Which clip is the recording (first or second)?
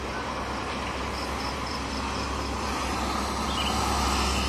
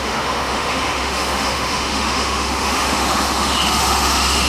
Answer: first